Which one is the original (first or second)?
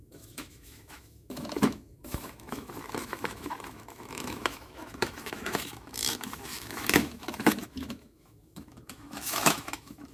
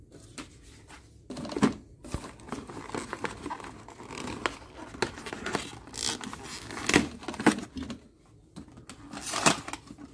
second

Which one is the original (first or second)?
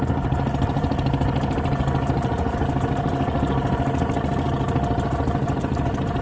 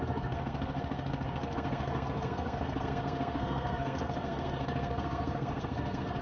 first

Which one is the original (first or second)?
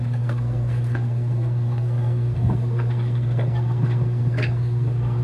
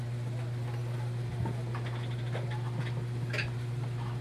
second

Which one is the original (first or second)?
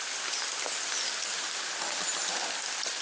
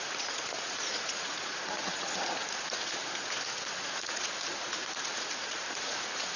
first